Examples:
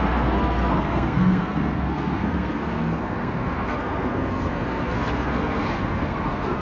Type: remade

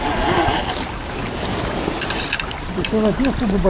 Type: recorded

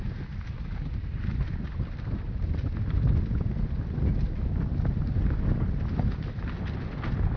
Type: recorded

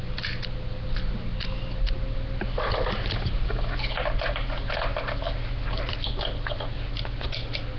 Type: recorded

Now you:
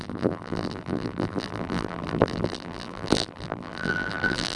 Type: remade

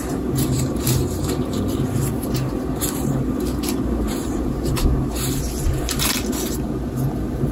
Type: remade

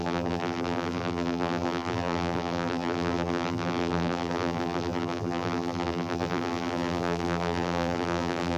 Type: remade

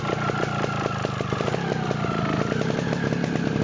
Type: recorded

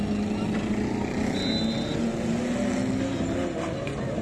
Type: recorded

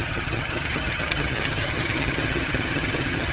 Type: remade